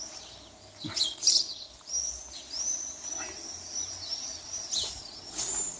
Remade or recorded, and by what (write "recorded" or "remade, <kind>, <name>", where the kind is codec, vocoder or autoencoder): recorded